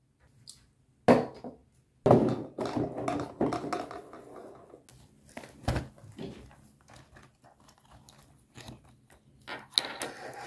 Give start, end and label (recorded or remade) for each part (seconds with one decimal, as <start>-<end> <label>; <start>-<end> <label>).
0.0-10.5 recorded